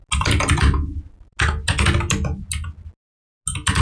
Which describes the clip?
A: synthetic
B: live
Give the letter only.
B